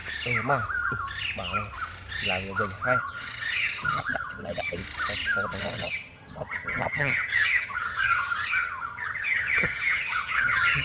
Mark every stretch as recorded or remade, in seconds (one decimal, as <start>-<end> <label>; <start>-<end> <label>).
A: 0.0-3.0 recorded; 3.0-4.8 remade; 4.8-5.6 recorded; 5.6-10.8 remade